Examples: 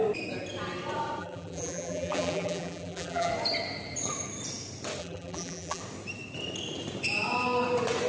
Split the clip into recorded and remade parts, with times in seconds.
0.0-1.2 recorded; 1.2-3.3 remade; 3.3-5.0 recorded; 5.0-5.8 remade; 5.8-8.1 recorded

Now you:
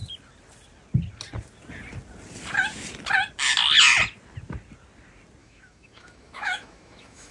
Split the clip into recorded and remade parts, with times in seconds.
0.0-5.4 recorded; 5.4-7.3 remade